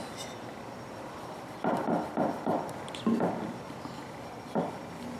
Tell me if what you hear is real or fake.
real